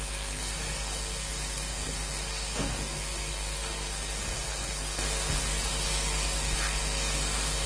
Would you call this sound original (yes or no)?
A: no